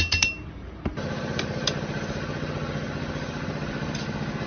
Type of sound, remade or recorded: recorded